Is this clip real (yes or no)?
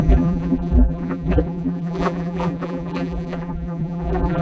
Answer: no